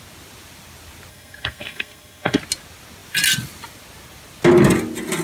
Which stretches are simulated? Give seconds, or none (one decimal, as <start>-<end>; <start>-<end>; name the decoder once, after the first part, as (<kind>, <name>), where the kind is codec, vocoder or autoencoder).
1.1-2.4 (codec, SNAC)